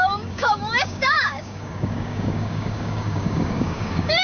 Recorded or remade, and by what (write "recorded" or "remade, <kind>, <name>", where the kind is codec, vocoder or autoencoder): remade, codec, DAC